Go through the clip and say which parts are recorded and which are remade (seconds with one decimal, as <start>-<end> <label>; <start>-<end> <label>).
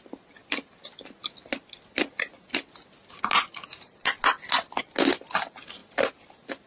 0.0-6.7 recorded